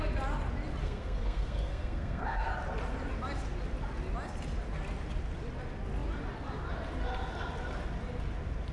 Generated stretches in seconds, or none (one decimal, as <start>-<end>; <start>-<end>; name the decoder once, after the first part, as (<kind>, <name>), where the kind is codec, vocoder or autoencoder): 0.8-2.5 (codec, SNAC)